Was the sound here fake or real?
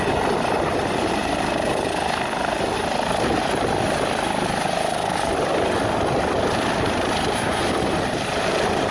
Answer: real